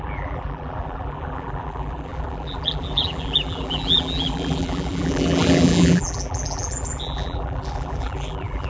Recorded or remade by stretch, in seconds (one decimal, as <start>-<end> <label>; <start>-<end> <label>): 0.0-8.7 remade